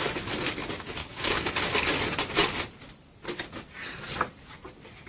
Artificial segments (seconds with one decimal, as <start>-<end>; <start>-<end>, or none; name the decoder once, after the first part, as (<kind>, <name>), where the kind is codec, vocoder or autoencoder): 1.0-1.5 (codec, DAC)